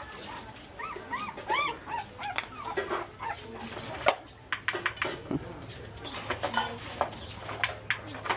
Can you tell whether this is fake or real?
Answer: real